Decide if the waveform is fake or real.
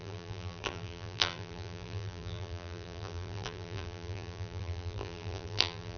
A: fake